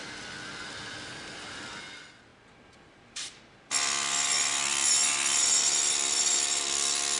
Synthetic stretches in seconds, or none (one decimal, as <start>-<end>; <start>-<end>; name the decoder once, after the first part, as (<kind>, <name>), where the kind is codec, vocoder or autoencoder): none